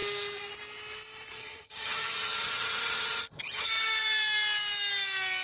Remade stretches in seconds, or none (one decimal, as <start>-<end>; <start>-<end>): 1.4-3.7